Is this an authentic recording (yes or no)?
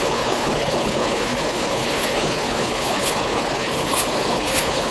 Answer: no